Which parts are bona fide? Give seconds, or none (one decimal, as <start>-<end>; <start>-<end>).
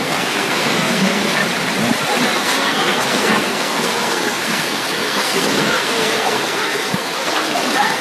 1.4-2.4